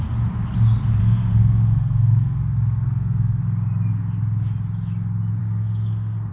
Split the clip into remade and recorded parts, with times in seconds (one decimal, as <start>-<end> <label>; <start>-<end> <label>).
0.0-1.0 recorded; 1.0-3.4 remade; 3.4-5.4 recorded; 5.4-6.3 remade